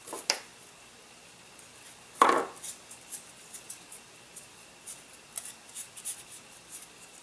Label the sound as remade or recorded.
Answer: recorded